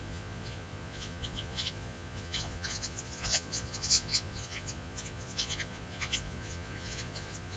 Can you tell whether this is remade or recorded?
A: remade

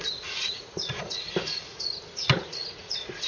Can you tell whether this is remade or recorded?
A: remade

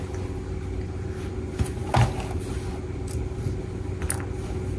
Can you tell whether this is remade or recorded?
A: recorded